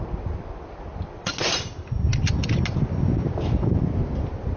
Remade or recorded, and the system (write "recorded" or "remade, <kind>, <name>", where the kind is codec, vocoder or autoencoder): recorded